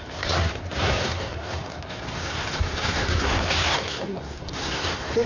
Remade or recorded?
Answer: remade